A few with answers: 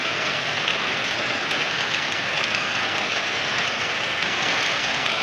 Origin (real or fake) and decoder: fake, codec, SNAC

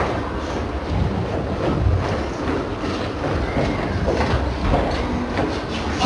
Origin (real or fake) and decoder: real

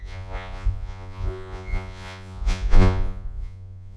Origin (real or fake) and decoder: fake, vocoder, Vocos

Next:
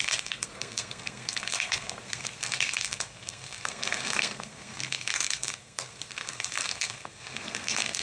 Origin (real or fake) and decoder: fake, codec, SNAC